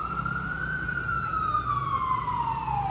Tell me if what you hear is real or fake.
fake